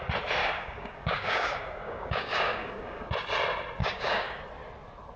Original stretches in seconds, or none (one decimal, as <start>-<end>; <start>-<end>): 0.0-0.4; 3.1-3.8; 4.4-5.2